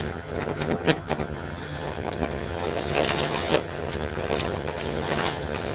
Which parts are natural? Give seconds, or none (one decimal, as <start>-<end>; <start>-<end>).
none